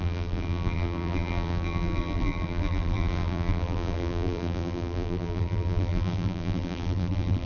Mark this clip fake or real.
fake